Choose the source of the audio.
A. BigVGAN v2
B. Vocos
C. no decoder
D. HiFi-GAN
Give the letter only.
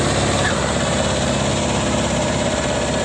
A